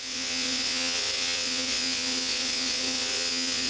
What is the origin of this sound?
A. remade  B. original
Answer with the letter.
A